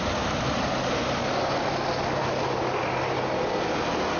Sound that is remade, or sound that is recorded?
recorded